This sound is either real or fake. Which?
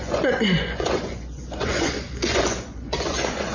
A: fake